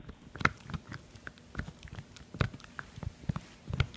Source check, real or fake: real